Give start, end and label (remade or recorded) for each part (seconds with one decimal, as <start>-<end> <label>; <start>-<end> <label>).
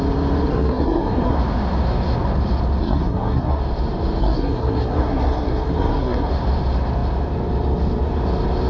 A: 0.0-0.5 recorded; 0.5-1.4 remade; 1.4-2.8 recorded; 2.8-3.6 remade; 3.6-4.2 recorded; 4.2-6.3 remade; 6.3-8.7 recorded